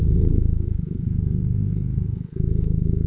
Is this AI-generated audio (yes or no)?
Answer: yes